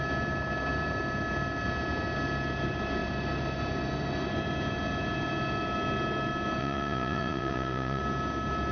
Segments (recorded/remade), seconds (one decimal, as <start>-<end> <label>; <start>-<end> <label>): 0.0-6.6 recorded; 6.6-8.0 remade; 8.0-8.7 recorded